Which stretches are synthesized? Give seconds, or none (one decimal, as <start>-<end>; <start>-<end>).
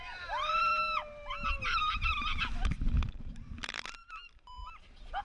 0.0-0.7; 1.8-5.2